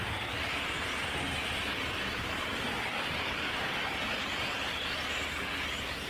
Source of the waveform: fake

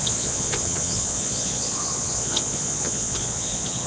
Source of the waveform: fake